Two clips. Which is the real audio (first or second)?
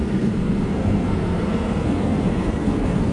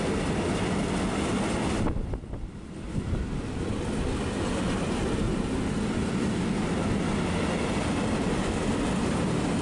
second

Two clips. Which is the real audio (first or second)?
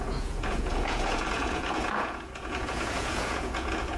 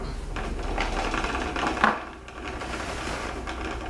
second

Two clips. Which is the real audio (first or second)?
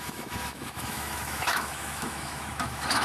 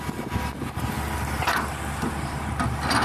second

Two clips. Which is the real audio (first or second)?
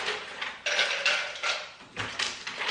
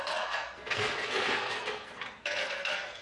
first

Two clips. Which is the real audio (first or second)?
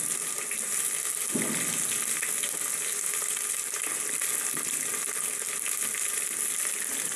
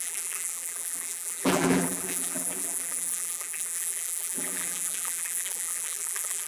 first